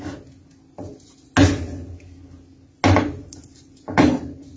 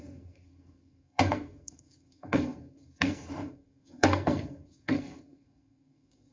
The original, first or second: first